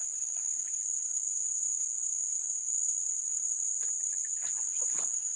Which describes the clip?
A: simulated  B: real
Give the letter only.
A